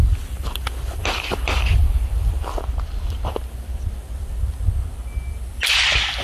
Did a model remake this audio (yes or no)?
no